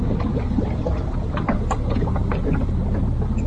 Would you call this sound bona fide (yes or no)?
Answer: yes